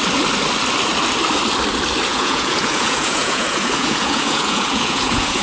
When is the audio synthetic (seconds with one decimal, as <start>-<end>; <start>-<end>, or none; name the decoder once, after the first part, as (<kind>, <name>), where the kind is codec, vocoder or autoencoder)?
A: 2.1-5.4 (vocoder, Vocos)